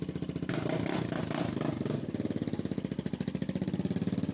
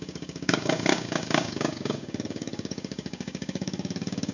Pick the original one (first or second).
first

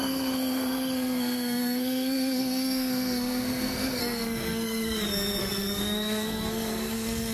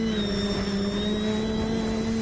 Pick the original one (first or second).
second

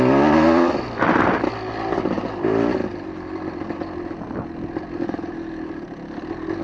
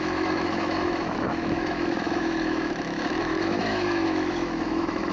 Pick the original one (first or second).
first